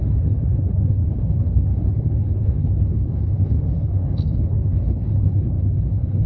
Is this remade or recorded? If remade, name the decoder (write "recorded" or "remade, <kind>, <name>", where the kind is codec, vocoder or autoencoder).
remade, codec, HILCodec